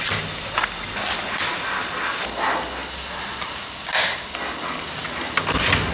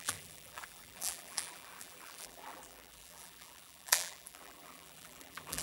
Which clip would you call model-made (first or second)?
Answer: second